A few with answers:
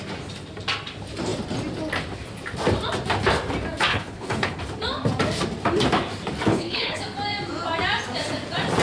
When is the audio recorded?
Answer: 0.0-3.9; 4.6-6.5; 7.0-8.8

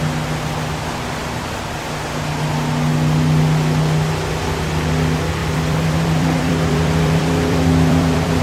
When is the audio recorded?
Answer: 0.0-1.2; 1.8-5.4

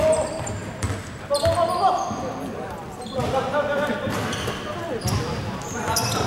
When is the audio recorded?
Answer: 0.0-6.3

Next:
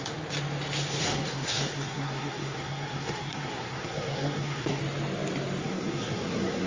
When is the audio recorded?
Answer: 0.0-1.0; 4.8-5.6

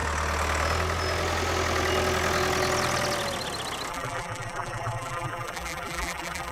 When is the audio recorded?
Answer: 0.0-3.9

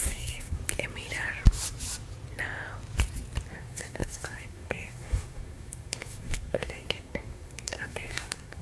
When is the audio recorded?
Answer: 0.6-3.5

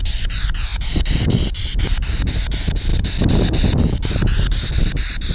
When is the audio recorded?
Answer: 0.0-5.3